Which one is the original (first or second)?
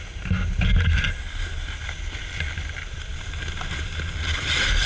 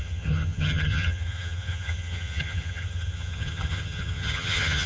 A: first